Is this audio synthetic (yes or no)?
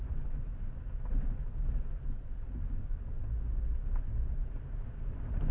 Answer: no